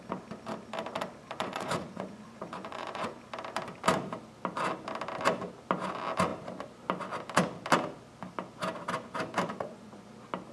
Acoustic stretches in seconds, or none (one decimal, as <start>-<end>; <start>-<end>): 0.0-1.2; 3.1-9.5; 10.1-10.5